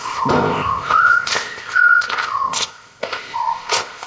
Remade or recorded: remade